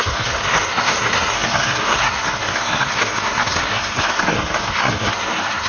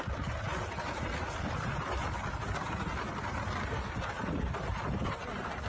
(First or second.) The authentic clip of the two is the second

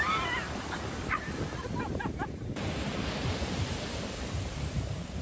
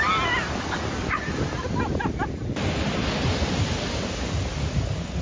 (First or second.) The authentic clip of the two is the second